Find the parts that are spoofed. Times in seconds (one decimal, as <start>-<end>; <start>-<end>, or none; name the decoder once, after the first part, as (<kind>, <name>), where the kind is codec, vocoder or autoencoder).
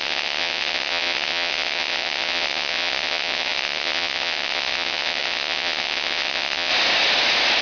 0.0-6.7 (vocoder, WaveNeXt)